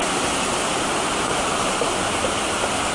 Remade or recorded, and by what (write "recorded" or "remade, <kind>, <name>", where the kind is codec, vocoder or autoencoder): recorded